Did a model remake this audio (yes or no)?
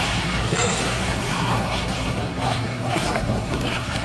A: yes